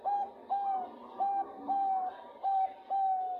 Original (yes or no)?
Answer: yes